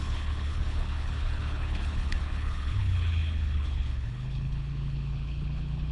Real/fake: fake